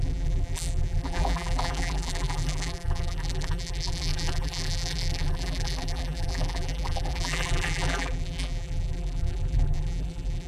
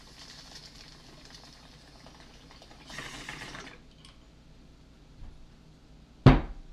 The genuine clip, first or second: second